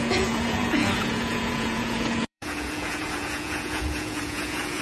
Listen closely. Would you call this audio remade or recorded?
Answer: remade